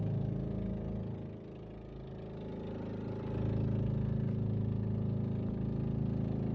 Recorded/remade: recorded